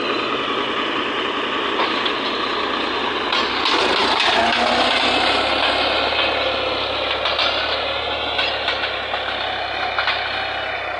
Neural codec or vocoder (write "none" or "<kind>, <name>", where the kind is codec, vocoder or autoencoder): none